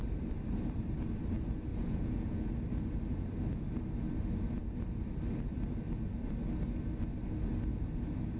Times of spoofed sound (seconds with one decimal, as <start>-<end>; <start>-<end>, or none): 1.7-2.5